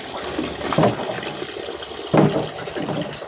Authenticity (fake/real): real